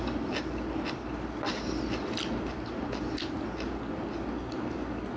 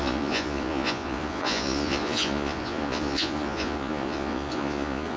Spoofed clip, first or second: second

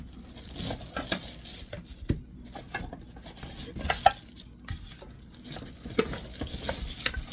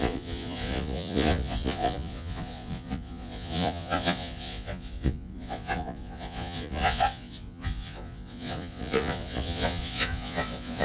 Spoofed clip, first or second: second